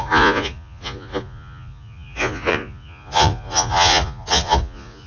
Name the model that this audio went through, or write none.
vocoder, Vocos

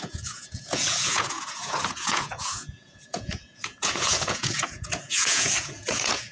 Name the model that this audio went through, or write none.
vocoder, Vocos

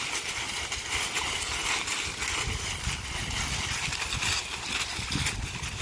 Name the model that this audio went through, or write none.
none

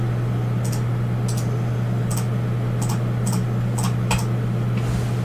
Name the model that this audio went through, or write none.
none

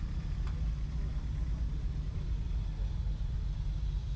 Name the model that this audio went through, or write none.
none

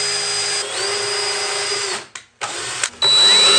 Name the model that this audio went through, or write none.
none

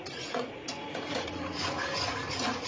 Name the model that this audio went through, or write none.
vocoder, Vocos